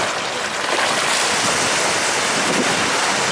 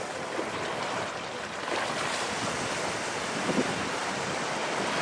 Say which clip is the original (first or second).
first